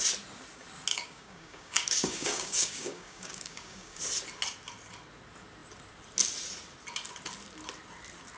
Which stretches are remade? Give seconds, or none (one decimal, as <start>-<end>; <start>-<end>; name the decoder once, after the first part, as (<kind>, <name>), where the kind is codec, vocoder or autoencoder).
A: 0.9-4.0 (codec, DAC)